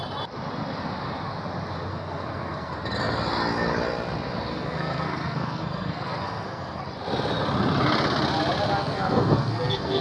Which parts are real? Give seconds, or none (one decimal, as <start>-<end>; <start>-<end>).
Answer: 0.0-1.9; 2.7-4.5; 6.8-8.8